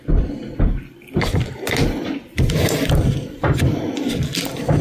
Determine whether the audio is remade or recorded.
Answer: remade